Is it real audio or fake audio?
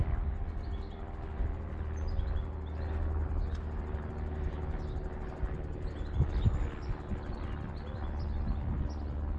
real